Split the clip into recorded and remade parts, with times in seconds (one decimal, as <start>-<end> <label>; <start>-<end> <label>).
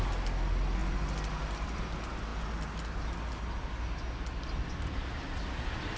0.0-6.0 recorded